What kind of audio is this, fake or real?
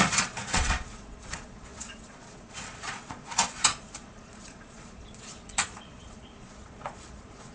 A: fake